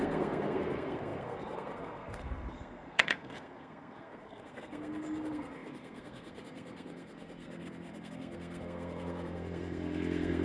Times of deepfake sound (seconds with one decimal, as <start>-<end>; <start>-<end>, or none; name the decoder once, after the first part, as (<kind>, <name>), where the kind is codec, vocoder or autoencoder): 0.0-10.4 (codec, SNAC)